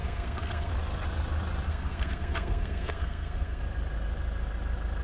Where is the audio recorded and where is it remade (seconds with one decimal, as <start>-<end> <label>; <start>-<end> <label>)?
0.0-0.7 remade; 0.7-1.7 recorded; 1.7-3.6 remade; 3.6-5.0 recorded